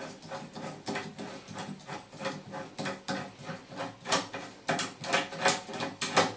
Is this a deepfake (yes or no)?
no